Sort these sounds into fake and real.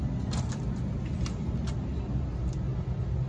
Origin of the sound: real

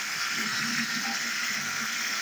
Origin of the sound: fake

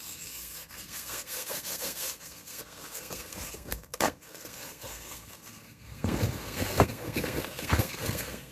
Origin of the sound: fake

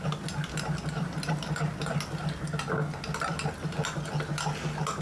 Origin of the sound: real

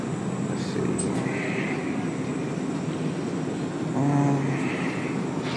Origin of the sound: real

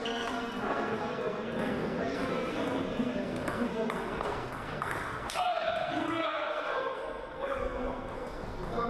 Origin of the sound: fake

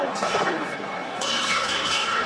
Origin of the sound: fake